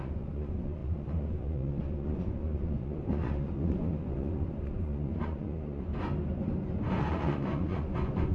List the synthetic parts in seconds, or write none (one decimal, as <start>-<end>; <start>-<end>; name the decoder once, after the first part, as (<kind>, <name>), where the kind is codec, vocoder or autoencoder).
0.0-5.9 (vocoder, Vocos); 7.0-8.3